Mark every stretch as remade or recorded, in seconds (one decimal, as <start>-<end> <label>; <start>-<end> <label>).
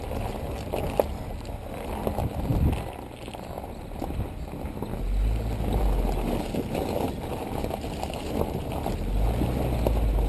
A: 0.0-10.3 recorded